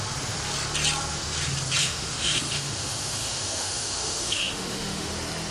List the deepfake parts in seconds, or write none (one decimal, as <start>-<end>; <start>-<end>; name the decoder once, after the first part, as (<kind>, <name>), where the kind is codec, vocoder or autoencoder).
1.8-5.1 (autoencoder, DAC-VAE)